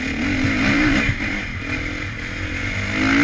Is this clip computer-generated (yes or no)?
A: no